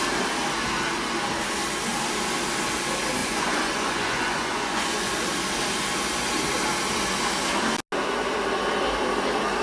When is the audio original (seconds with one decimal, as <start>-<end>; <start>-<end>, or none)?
0.0-3.2; 5.1-9.6